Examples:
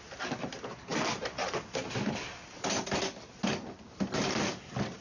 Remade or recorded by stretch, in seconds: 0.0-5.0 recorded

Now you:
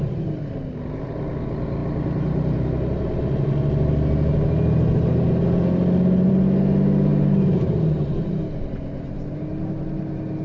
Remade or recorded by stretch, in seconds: 0.0-10.4 recorded

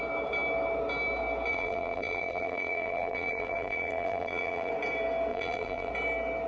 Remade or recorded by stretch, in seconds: 0.0-1.5 recorded; 1.5-4.7 remade; 4.7-5.3 recorded; 5.3-5.9 remade; 5.9-6.5 recorded

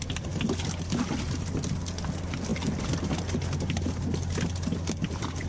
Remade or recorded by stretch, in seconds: 0.0-5.5 recorded

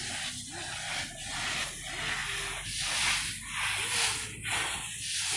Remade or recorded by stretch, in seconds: 0.0-5.4 recorded

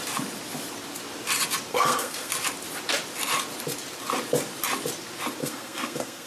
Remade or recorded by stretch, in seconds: 0.0-1.7 recorded; 1.7-2.3 remade; 2.3-5.4 recorded; 5.4-6.3 remade